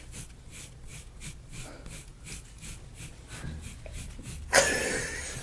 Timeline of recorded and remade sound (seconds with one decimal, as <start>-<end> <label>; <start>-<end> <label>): 0.0-5.4 recorded

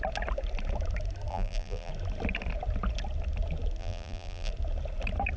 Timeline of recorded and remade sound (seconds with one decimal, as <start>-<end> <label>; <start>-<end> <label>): 0.0-1.3 recorded; 1.3-1.9 remade; 1.9-3.8 recorded; 3.8-4.5 remade; 4.5-5.4 recorded

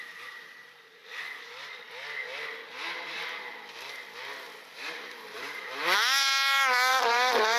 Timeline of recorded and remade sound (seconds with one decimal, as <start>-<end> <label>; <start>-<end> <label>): 0.0-1.0 remade; 1.0-4.7 recorded; 4.7-5.8 remade; 5.8-6.9 recorded; 6.9-7.6 remade

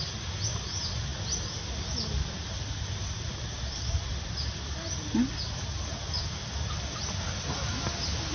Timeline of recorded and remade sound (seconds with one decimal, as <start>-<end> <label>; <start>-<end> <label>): 0.0-8.3 recorded

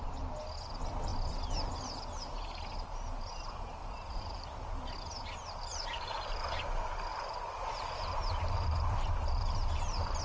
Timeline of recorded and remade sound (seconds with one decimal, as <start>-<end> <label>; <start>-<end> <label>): 0.0-3.8 recorded; 3.8-4.8 remade; 4.8-5.7 recorded; 5.7-6.5 remade; 6.5-7.1 recorded; 7.1-10.2 remade